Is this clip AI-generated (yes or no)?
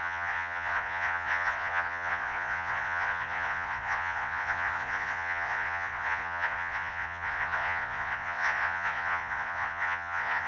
yes